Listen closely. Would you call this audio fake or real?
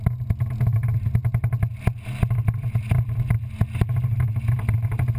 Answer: real